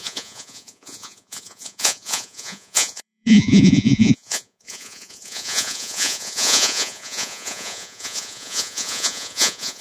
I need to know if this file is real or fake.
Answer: fake